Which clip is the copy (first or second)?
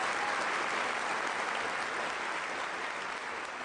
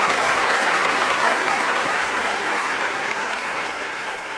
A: second